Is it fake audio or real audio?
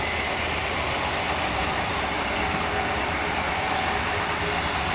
real